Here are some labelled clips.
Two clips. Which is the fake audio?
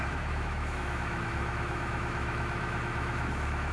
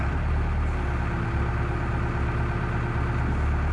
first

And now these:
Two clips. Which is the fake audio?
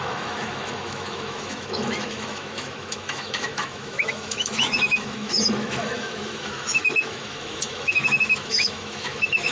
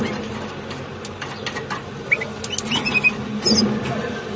first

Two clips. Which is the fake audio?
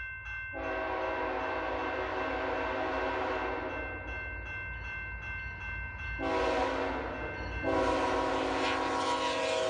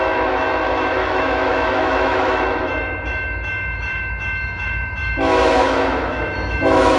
second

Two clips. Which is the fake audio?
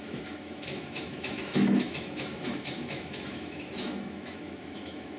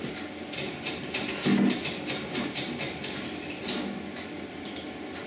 first